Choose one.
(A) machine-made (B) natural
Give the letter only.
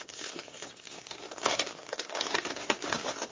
A